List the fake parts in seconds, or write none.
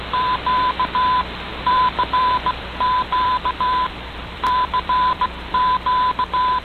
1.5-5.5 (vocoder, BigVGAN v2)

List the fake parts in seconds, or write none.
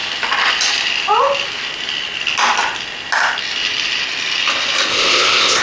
4.9-5.6 (codec, ZipCodec)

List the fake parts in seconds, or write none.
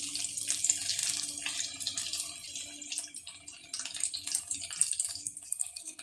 5.1-6.0 (codec, SNAC)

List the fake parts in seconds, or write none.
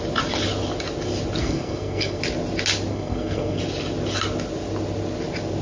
1.4-2.2 (codec, SNAC); 2.9-3.6